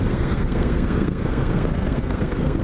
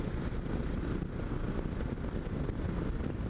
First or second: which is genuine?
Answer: second